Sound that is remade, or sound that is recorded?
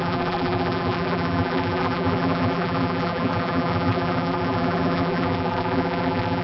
remade